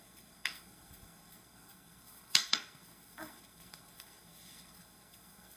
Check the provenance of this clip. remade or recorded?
remade